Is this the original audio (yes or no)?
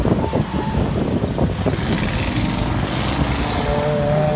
yes